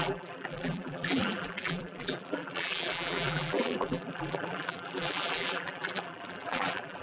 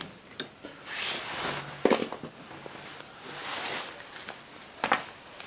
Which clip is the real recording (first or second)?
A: second